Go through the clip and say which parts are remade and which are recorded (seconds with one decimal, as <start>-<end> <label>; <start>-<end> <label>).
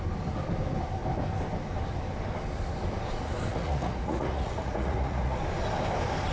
0.0-3.5 recorded; 3.5-5.4 remade; 5.4-6.3 recorded